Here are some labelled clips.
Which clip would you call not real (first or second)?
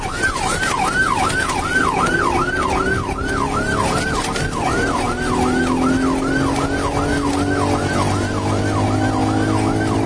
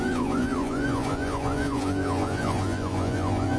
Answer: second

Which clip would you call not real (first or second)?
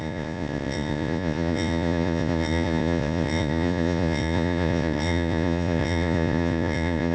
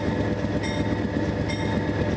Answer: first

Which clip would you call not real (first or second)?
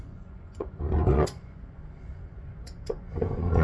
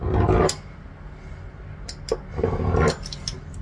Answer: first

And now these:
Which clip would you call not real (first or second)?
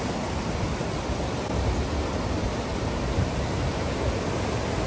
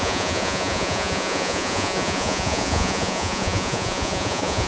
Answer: second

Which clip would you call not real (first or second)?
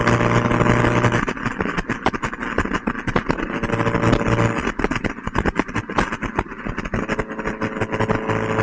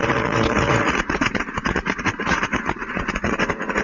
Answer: second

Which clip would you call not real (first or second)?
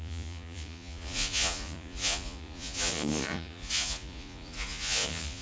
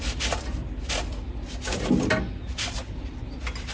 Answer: first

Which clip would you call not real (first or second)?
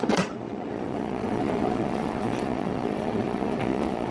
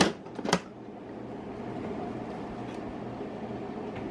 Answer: first